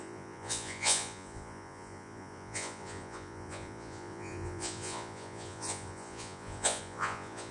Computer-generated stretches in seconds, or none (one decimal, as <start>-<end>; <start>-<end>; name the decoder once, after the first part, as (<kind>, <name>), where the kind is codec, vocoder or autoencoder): 0.0-7.5 (vocoder, Vocos)